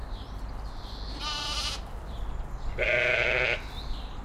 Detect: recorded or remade recorded